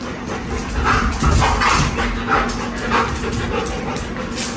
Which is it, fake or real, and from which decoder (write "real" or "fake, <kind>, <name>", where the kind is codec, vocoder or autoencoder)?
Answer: real